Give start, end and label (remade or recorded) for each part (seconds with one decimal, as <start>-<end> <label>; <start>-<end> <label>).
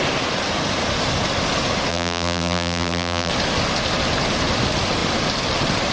0.0-1.9 recorded; 1.9-3.3 remade; 3.3-5.9 recorded